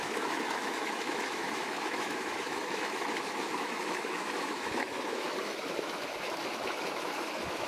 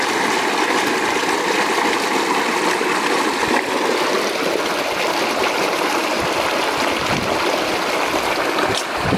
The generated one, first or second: first